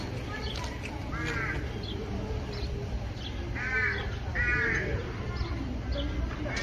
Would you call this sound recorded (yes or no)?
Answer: yes